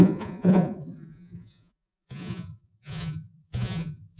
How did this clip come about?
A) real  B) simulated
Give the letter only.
B